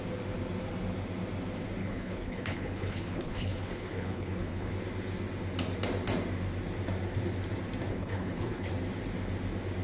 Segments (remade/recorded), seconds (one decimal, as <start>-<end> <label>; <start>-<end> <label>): 0.0-1.8 recorded; 1.8-4.7 remade; 4.7-7.9 recorded; 7.9-8.7 remade; 8.7-9.8 recorded